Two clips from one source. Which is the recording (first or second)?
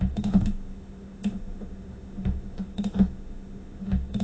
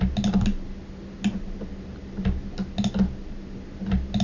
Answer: second